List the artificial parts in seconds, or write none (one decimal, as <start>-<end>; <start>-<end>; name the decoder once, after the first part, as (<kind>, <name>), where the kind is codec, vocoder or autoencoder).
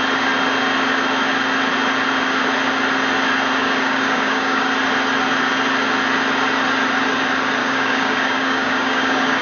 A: 3.6-4.7 (codec, DAC); 7.6-9.4